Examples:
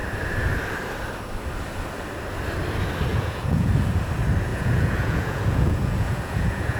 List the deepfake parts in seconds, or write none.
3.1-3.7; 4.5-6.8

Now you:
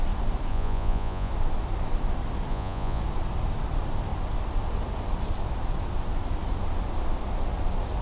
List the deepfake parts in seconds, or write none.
0.5-1.3; 2.5-3.0

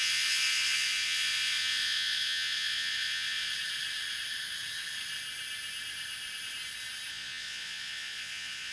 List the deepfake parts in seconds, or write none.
0.0-3.5; 7.1-8.7

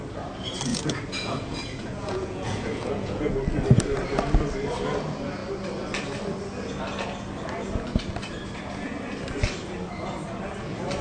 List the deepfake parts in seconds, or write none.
0.7-3.3

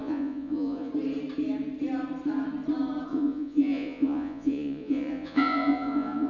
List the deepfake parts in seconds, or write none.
0.0-0.9; 3.1-6.3

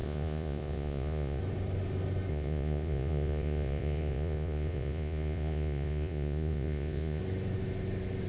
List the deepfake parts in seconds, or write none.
0.0-1.4; 2.3-7.2

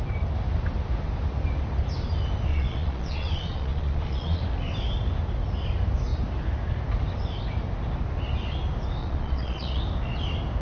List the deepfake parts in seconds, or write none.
2.5-4.4; 9.0-9.8